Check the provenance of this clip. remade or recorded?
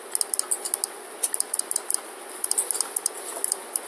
recorded